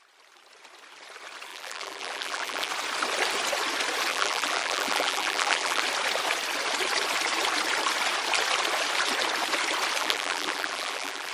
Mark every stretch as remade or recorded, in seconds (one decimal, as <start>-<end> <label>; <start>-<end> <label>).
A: 0.0-1.5 recorded; 1.5-2.7 remade; 2.7-4.1 recorded; 4.1-5.8 remade; 5.8-10.0 recorded; 10.0-11.3 remade